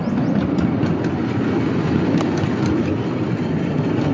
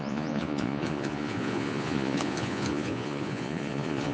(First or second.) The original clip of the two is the first